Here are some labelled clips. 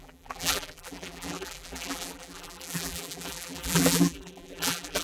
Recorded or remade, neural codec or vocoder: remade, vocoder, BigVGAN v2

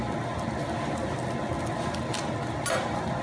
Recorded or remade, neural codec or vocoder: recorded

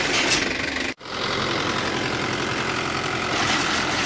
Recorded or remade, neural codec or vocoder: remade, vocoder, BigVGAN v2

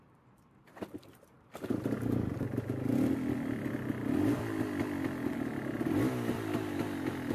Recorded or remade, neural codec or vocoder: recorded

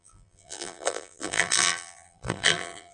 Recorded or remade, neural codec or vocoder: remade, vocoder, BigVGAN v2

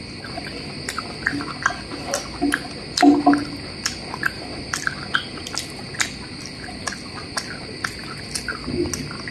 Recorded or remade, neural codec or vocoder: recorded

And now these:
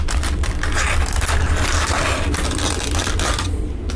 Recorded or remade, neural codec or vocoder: remade, vocoder, BigVGAN v2